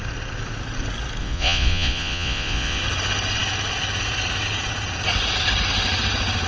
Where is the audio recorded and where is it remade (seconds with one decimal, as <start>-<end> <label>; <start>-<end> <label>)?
0.0-1.2 recorded; 1.2-2.8 remade; 2.8-6.5 recorded